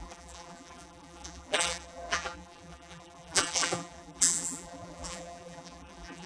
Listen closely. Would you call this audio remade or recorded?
remade